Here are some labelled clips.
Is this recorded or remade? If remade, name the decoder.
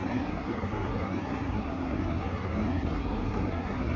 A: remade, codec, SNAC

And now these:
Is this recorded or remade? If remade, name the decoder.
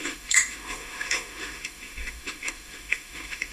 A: remade, autoencoder, DAC-VAE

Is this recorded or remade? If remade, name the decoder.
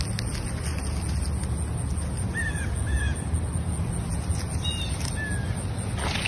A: recorded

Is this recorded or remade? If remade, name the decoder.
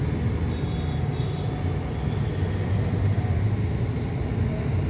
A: recorded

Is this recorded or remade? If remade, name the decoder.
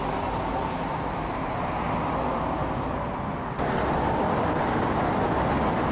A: recorded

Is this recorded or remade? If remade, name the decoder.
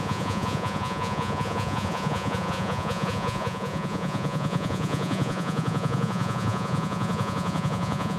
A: remade, vocoder, Vocos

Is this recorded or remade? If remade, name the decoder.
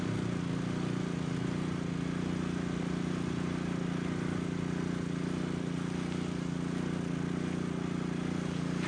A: recorded